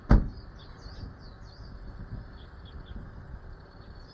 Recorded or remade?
remade